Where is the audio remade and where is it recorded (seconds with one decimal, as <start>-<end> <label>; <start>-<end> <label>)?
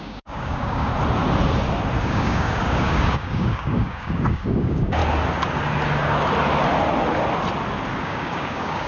0.0-0.9 remade; 0.9-2.0 recorded; 2.0-5.0 remade; 5.0-8.0 recorded; 8.0-8.9 remade